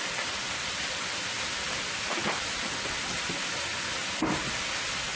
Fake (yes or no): no